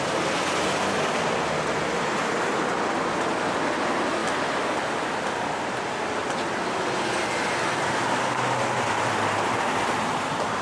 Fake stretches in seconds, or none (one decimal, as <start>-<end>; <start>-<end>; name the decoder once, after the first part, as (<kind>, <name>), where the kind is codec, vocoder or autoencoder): none